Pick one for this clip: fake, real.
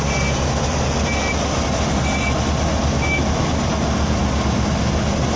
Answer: real